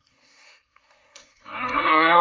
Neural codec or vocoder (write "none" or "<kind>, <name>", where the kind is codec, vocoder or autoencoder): codec, SNAC